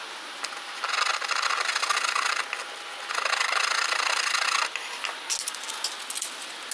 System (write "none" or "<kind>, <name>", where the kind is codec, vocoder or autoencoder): none